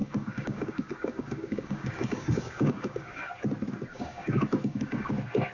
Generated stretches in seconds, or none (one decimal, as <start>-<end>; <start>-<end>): 0.0-3.3; 3.9-5.1